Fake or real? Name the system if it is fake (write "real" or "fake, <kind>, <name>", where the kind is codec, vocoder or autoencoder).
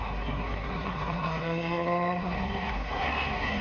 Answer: fake, codec, SNAC